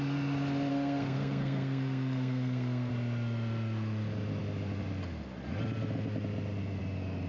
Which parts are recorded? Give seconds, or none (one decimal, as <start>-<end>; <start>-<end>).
0.0-0.7; 2.9-7.3